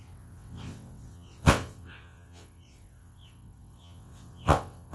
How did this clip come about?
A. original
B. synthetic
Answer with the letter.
B